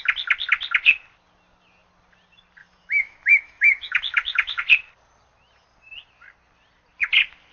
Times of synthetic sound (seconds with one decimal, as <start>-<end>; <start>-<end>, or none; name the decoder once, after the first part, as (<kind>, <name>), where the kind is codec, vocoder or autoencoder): 2.6-4.6 (autoencoder, DAC-VAE)